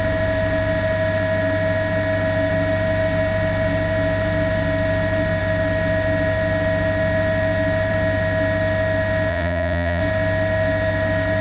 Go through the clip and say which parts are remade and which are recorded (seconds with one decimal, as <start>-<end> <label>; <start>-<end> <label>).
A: 0.0-9.3 recorded; 9.3-10.0 remade; 10.0-11.4 recorded